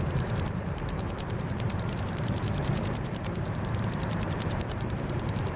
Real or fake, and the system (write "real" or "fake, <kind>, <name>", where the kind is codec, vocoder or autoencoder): fake, vocoder, BigVGAN v2